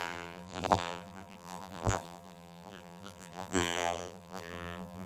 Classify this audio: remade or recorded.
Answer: remade